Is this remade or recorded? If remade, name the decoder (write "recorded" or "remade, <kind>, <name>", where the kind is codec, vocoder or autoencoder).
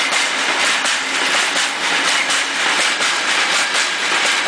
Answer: recorded